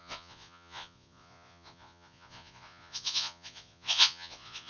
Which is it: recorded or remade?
remade